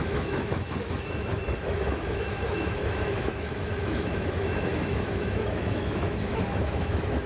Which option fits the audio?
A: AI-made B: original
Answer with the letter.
A